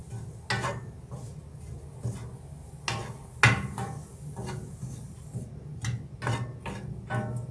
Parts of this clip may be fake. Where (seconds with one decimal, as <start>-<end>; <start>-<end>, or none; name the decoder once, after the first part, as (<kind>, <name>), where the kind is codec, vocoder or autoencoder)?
none